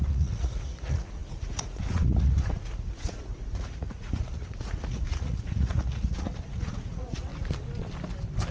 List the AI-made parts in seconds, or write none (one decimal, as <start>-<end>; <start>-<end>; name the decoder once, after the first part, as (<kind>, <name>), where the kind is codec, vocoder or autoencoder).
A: 0.0-7.3 (vocoder, Vocos)